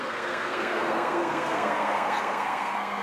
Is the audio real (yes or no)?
no